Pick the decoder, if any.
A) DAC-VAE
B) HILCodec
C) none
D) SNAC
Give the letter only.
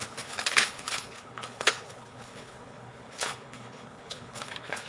B